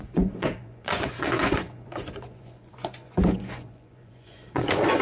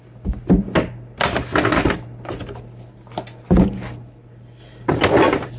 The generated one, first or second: first